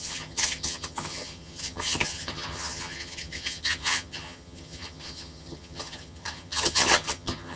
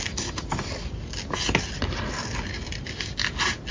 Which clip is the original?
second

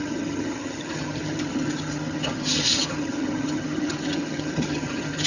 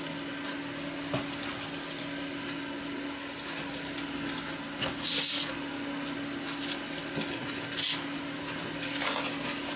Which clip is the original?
second